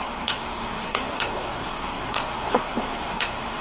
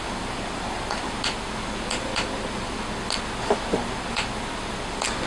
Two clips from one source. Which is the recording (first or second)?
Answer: second